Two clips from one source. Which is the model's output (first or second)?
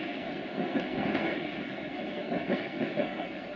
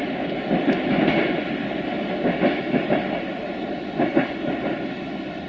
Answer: first